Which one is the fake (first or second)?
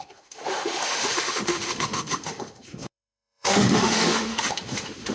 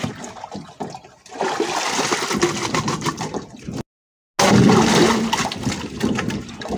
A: first